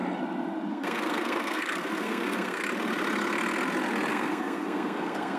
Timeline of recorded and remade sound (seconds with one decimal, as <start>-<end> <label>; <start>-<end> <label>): 0.0-0.7 recorded; 0.7-2.6 remade; 2.6-4.1 recorded; 4.1-5.4 remade